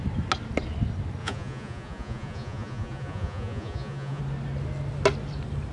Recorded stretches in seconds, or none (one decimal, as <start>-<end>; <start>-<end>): 0.0-1.2; 4.2-5.7